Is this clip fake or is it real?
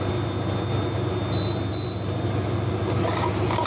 real